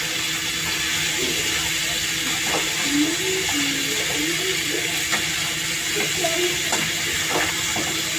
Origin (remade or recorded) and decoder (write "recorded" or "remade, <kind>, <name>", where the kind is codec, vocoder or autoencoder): recorded